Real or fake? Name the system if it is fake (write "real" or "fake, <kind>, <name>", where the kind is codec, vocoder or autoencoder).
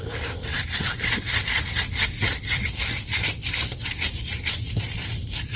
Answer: fake, vocoder, BigVGAN v2